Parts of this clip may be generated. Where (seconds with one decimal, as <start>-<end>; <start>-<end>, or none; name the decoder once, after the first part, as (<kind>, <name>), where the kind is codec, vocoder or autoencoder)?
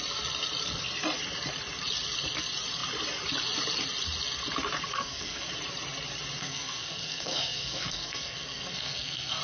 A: 4.9-5.5 (codec, SNAC); 6.4-9.4